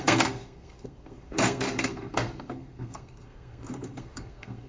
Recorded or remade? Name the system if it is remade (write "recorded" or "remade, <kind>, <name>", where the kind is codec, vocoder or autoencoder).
remade, codec, SNAC